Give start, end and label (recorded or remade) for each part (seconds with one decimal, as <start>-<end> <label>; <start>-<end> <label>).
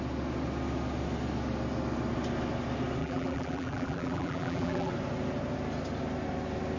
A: 0.0-3.0 recorded; 3.0-4.9 remade; 4.9-6.8 recorded